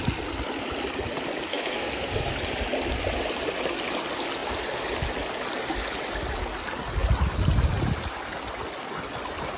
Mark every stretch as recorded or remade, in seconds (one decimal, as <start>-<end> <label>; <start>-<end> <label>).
0.0-1.5 recorded; 1.5-2.3 remade; 2.3-9.6 recorded